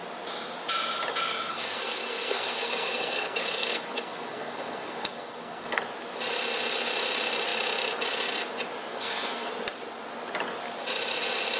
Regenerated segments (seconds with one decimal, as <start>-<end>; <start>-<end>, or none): 1.3-5.8; 8.9-9.5